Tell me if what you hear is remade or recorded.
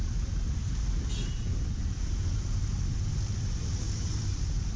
remade